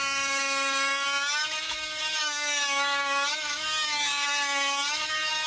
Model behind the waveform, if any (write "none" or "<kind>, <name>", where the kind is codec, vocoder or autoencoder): autoencoder, DAC-VAE